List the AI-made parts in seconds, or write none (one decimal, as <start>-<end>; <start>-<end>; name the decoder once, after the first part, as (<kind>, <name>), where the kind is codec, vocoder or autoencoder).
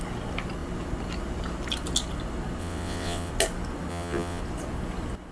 2.6-3.3 (vocoder, WaveNeXt); 3.9-4.4